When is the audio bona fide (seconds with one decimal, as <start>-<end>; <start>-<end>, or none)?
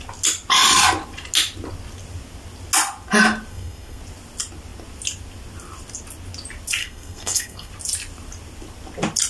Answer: 0.0-3.5; 4.0-6.8; 7.7-9.3